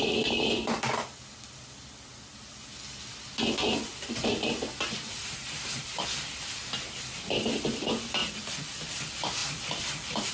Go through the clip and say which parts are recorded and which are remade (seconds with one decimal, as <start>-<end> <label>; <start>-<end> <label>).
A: 0.0-10.3 recorded